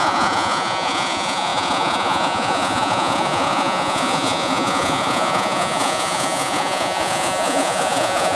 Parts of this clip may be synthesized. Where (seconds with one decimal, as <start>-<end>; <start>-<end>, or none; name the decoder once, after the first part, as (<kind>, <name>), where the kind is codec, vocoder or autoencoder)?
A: 0.0-8.4 (vocoder, Vocos)